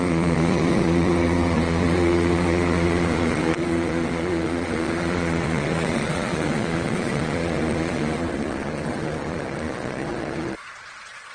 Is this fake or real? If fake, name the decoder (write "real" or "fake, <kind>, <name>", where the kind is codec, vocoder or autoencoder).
fake, vocoder, Vocos